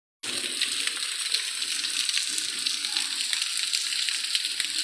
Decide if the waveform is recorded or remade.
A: recorded